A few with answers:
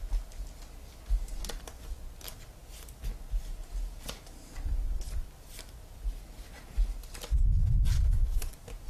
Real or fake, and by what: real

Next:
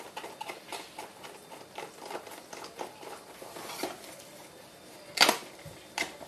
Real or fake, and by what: real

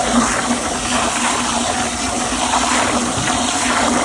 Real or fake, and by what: real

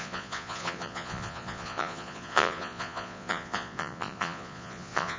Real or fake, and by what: fake, vocoder, Vocos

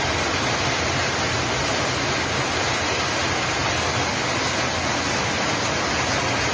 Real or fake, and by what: real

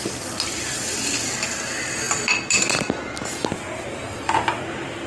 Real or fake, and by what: real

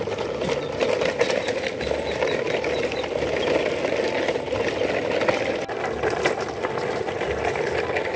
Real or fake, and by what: real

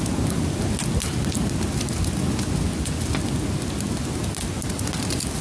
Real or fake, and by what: real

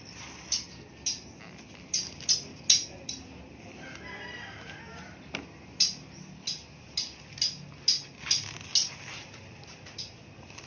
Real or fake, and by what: real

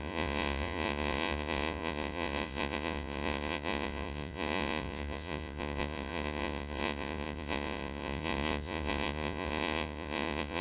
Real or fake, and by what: fake, vocoder, Vocos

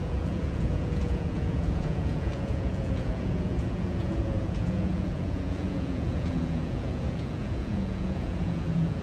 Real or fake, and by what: fake, vocoder, Vocos